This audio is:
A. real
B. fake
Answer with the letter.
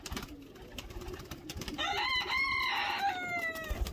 A